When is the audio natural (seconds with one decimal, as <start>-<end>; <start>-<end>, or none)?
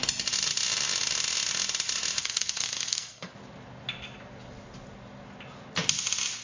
0.0-2.2; 3.3-6.4